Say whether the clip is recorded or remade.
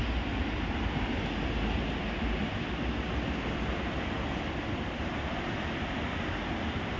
recorded